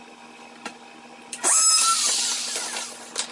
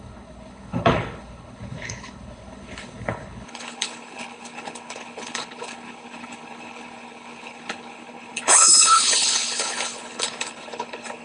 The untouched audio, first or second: first